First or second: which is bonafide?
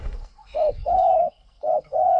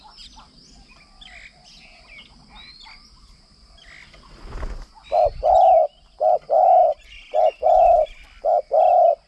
second